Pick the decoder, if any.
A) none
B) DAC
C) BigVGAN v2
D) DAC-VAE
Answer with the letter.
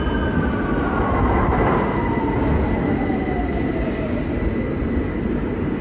A